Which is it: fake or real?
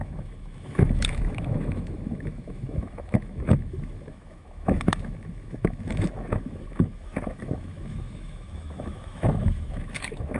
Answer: fake